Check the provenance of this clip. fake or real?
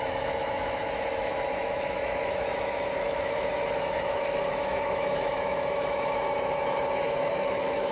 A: fake